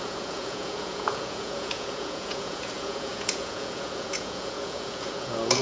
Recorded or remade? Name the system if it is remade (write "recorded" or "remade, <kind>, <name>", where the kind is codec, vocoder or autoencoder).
remade, vocoder, Vocos